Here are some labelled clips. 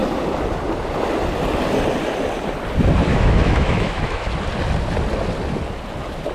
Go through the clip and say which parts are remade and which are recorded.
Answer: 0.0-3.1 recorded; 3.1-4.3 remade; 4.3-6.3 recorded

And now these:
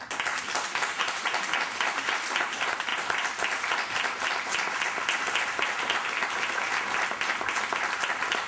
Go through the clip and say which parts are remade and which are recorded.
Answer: 0.0-8.5 recorded

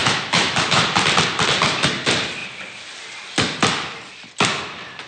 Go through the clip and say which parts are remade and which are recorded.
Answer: 0.0-0.8 remade; 0.8-5.1 recorded

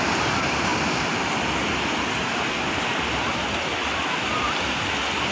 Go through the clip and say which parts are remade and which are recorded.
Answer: 0.0-5.3 recorded

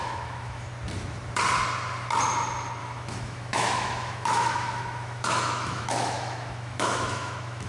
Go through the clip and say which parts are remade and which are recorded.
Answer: 0.0-0.7 remade; 0.7-2.8 recorded; 2.8-7.7 remade